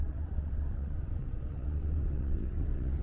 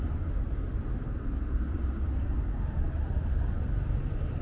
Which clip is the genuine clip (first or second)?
second